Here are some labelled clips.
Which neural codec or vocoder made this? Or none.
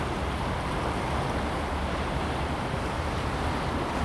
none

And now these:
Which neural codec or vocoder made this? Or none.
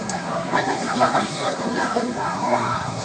codec, SNAC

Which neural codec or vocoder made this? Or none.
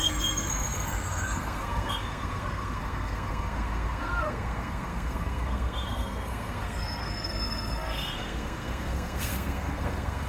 codec, SNAC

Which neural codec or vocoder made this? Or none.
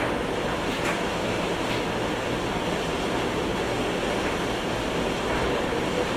none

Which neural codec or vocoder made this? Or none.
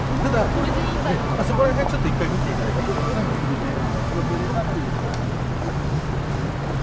none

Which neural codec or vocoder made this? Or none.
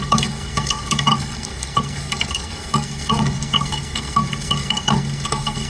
codec, SNAC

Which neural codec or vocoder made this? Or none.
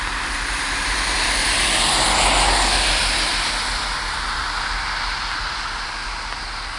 none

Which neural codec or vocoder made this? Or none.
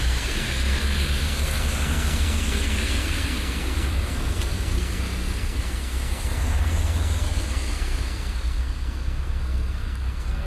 codec, SNAC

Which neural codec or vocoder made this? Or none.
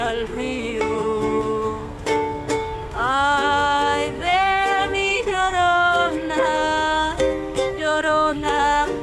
codec, SNAC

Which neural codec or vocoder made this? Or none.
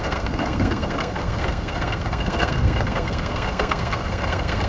codec, SNAC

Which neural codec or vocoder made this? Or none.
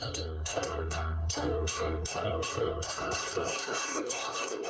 codec, SNAC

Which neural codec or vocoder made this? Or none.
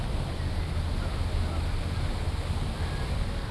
none